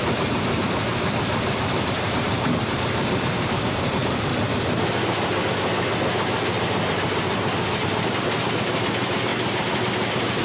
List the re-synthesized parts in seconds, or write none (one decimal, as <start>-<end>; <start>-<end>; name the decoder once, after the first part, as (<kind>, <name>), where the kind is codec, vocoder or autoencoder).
0.0-4.3 (vocoder, BigVGAN v2); 7.8-9.3